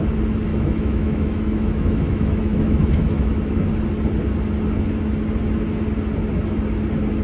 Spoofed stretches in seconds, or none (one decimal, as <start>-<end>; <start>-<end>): 0.5-3.7